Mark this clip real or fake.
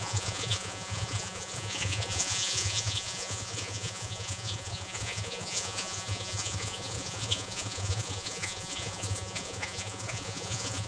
fake